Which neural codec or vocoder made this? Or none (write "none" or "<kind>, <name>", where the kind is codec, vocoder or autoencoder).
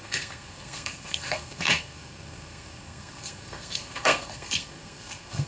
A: codec, SNAC